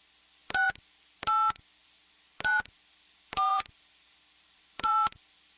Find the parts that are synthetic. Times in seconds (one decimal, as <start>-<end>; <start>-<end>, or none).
0.4-1.1; 1.8-5.6